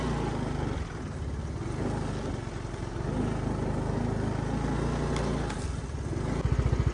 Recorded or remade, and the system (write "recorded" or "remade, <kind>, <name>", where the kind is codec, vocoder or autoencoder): recorded